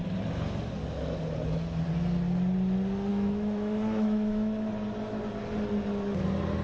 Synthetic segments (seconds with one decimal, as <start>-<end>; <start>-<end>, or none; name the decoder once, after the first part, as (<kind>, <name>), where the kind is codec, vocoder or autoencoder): 3.1-4.7 (autoencoder, DAC-VAE)